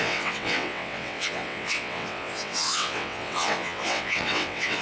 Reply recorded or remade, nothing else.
remade